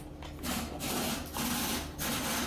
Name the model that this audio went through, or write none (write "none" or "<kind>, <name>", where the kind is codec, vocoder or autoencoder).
none